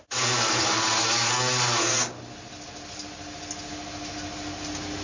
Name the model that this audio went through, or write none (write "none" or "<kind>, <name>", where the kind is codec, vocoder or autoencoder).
none